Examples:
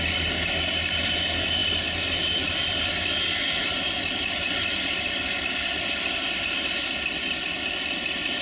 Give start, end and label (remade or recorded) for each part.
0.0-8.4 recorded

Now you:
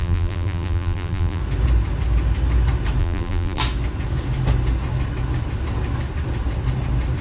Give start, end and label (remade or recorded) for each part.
0.0-1.4 remade; 1.4-3.0 recorded; 3.0-3.6 remade; 3.6-7.2 recorded

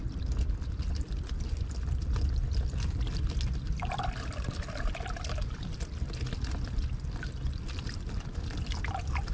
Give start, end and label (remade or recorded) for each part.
0.0-9.3 recorded

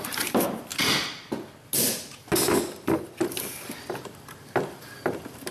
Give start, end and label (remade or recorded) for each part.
0.0-0.7 remade; 0.7-4.0 recorded; 4.0-5.5 remade